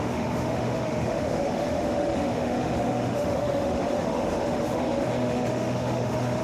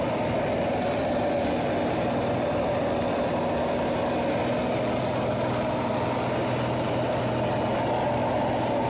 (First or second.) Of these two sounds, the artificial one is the first